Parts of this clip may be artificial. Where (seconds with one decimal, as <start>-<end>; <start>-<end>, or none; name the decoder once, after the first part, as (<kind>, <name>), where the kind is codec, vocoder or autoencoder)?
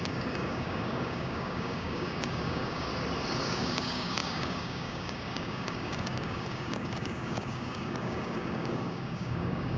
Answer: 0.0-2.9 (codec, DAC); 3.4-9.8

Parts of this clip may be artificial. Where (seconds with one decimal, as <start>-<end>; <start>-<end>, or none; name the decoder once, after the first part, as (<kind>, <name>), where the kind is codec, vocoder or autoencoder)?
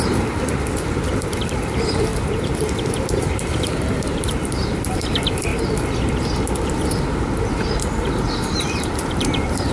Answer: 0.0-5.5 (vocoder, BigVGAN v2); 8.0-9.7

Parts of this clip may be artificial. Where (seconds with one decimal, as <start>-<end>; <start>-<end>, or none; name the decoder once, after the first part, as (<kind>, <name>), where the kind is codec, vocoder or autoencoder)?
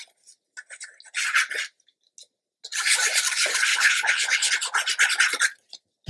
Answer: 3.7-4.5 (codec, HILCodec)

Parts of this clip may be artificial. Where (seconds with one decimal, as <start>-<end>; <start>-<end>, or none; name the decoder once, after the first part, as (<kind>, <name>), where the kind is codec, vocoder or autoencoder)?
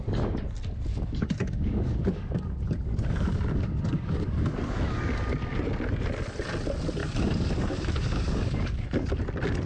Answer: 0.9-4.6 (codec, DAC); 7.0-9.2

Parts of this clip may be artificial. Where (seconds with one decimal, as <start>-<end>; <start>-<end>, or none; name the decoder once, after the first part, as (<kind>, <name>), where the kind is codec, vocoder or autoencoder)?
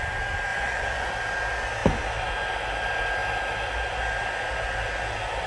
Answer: 0.5-1.1 (vocoder, Vocos)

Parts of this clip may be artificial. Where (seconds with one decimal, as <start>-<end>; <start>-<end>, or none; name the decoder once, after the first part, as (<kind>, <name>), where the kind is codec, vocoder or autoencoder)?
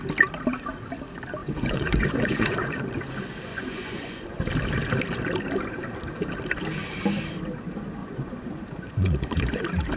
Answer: 1.4-2.8 (vocoder, Vocos); 3.5-4.5; 8.0-9.4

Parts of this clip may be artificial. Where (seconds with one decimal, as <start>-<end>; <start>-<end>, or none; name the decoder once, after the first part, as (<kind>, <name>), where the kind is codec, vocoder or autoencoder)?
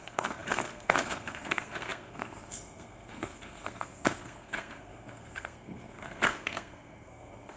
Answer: 0.0-7.6 (codec, SNAC)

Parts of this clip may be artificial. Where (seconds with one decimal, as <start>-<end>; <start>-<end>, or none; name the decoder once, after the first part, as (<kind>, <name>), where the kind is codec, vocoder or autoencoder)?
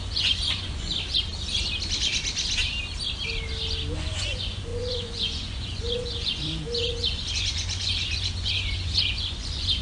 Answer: 0.0-0.9 (vocoder, Vocos); 4.0-9.8